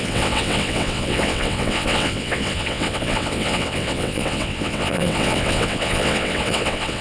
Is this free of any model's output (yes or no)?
no